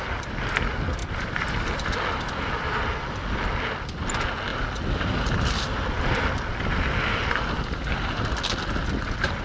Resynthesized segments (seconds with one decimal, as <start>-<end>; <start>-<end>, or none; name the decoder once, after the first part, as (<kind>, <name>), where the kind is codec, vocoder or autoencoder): 1.0-2.5 (vocoder, BigVGAN v2)